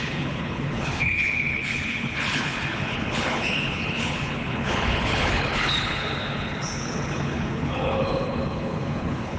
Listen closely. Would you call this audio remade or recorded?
remade